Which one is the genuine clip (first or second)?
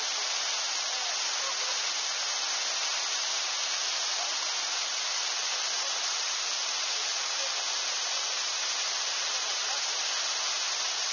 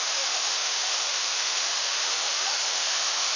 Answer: first